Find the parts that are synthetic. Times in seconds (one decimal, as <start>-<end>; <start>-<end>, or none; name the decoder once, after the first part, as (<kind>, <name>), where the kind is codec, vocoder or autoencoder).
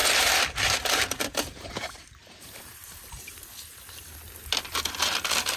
0.0-3.4 (vocoder, BigVGAN v2)